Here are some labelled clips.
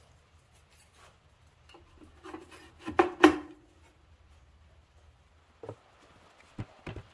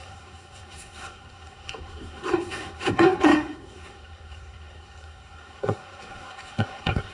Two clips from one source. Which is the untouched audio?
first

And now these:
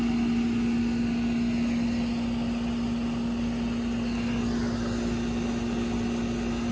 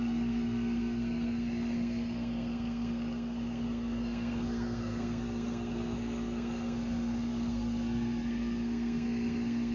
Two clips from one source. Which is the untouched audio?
first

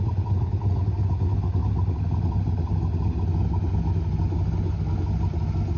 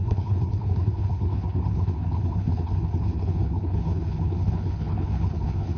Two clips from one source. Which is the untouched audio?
first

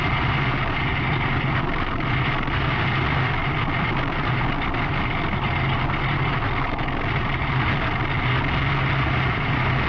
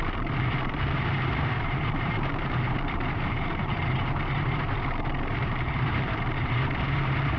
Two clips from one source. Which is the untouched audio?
first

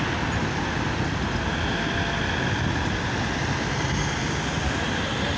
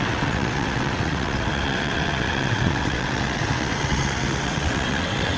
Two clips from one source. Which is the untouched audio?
first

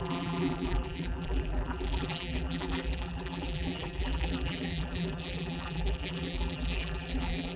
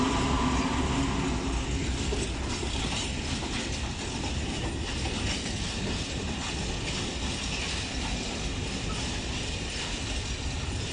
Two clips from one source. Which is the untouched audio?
second